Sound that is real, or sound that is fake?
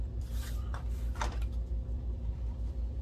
fake